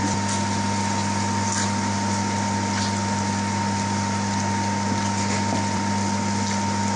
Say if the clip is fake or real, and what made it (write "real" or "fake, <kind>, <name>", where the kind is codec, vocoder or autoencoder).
real